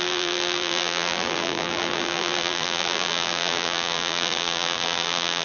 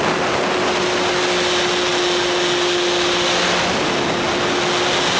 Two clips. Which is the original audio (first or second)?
second